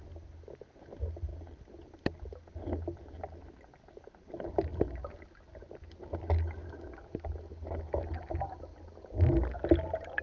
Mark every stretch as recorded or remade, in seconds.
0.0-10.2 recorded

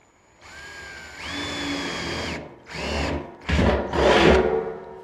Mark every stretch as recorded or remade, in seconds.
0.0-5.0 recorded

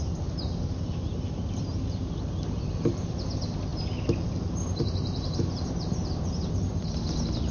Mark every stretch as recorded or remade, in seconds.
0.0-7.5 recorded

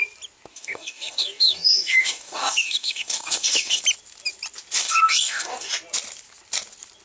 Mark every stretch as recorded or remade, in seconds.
0.0-0.5 recorded; 0.5-3.8 remade; 3.8-4.8 recorded; 4.8-5.7 remade; 5.7-7.0 recorded